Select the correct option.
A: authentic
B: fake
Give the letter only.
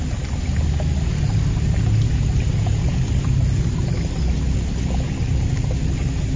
A